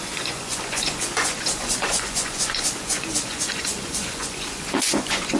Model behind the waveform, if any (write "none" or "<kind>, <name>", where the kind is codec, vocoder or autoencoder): vocoder, Vocos